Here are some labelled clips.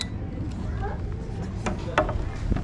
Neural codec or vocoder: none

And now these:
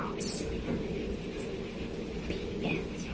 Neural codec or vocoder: none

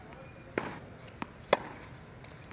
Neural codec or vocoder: none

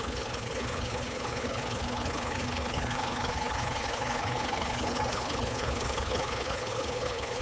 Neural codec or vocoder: codec, HILCodec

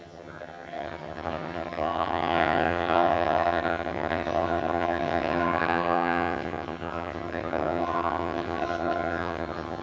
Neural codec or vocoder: vocoder, HiFi-GAN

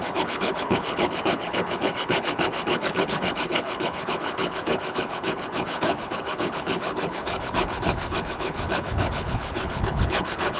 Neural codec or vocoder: codec, HILCodec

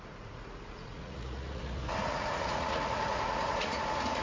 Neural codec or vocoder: vocoder, Vocos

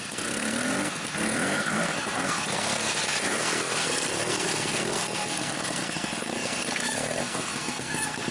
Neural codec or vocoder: codec, SNAC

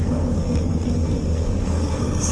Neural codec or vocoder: codec, SNAC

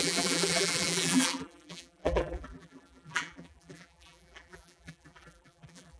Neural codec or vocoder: vocoder, BigVGAN v2